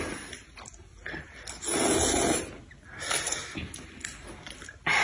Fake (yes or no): no